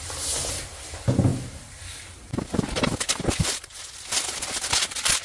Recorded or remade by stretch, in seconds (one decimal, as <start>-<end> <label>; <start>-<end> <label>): 0.0-5.2 recorded